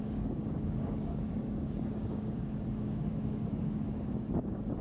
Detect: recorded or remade remade